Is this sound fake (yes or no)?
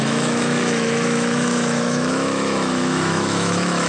yes